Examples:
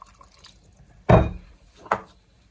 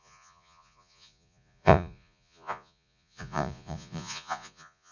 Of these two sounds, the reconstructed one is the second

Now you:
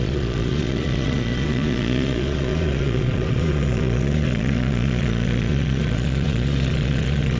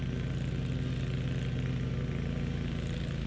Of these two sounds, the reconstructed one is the first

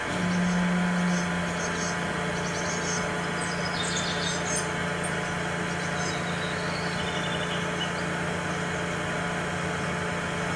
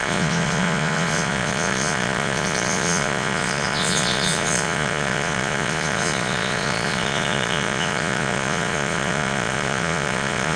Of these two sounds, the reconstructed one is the second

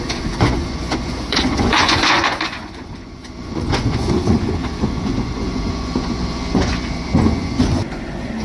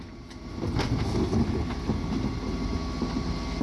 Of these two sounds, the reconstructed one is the first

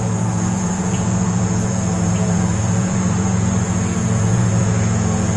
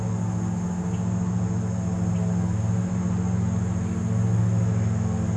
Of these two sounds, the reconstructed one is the first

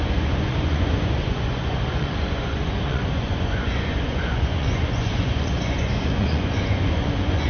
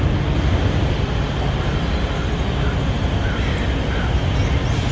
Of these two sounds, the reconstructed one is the first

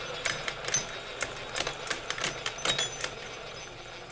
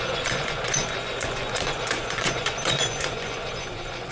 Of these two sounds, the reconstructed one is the second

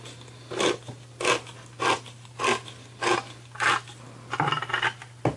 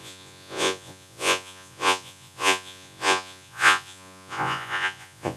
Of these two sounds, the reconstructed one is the second